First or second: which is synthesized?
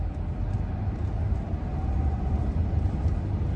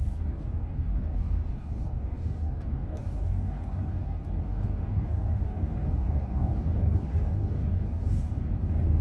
second